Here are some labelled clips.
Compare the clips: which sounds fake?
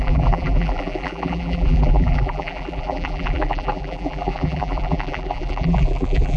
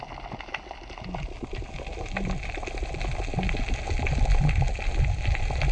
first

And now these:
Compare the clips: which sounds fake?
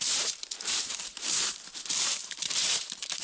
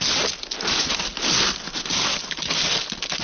first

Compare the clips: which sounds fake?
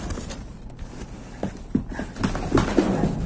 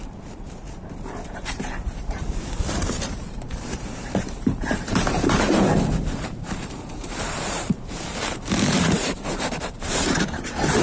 second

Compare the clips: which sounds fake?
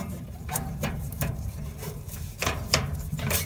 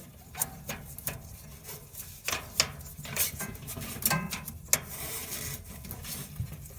first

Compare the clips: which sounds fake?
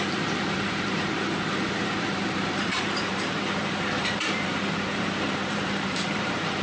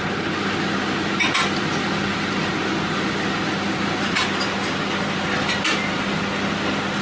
first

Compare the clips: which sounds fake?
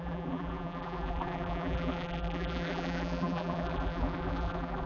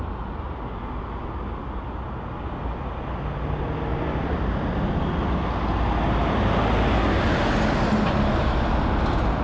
first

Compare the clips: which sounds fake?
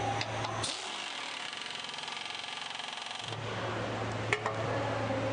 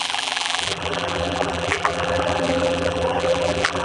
second